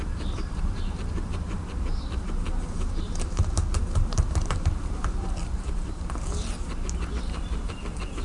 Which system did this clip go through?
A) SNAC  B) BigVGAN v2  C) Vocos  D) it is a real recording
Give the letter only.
B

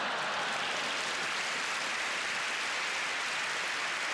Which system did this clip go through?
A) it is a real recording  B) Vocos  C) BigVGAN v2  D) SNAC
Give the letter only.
A